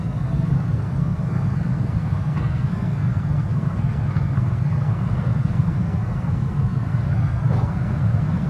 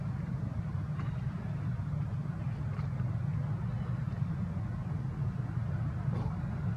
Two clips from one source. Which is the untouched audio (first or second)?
second